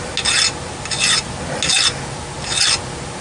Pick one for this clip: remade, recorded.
recorded